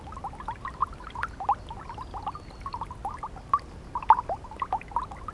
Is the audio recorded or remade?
recorded